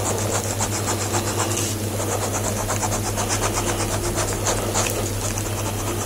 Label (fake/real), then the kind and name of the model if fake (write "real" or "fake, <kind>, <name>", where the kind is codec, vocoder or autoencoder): real